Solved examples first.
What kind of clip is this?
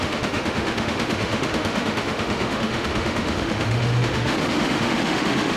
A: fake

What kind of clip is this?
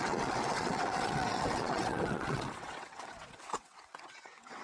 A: fake